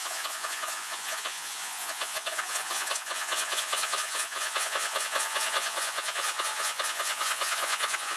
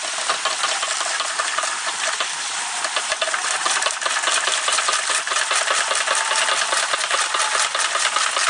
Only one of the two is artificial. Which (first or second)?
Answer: first